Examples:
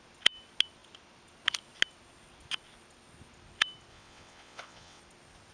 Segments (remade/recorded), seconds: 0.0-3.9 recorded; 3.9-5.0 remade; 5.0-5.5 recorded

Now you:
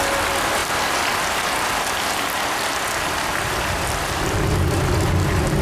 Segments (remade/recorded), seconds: 0.0-5.6 recorded

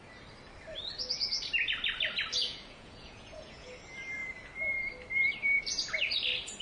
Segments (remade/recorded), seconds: 0.0-2.4 recorded; 2.4-3.7 remade; 3.7-6.6 recorded

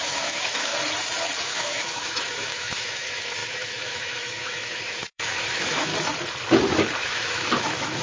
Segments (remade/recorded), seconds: 0.0-0.7 remade; 0.7-1.4 recorded; 1.4-5.9 remade; 5.9-7.0 recorded; 7.0-8.0 remade

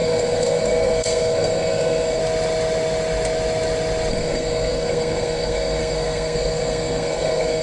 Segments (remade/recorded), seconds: 0.0-2.2 remade; 2.2-4.1 recorded; 4.1-7.6 remade